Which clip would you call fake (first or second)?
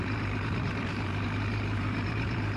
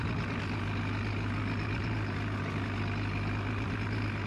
first